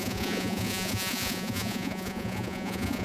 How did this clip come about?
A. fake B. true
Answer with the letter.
A